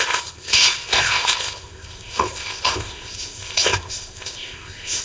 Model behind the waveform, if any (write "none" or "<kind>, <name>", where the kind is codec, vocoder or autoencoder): codec, ZipCodec